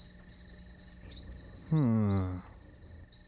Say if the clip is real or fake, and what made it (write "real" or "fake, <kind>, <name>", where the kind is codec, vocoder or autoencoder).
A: real